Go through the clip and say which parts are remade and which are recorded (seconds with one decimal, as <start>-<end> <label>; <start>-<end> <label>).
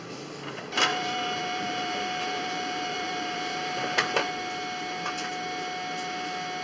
0.0-0.9 recorded; 0.9-4.3 remade; 4.3-6.6 recorded